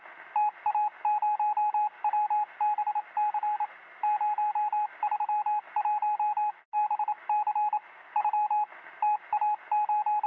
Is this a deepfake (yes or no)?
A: no